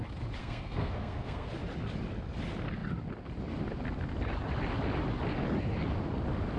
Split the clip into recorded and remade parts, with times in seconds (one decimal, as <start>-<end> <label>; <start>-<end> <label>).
0.0-0.4 recorded; 0.4-1.5 remade; 1.5-6.6 recorded